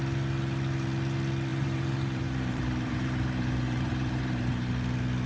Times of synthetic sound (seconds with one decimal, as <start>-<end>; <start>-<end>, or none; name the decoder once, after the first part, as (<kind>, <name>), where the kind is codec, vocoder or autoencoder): 1.5-4.7 (vocoder, BigVGAN v2)